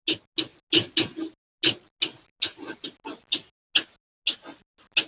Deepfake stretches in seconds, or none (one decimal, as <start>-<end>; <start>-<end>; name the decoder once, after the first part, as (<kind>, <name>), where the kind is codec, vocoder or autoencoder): none